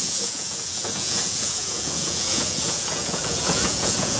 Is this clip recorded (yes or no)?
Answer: no